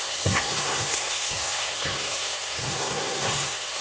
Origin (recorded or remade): remade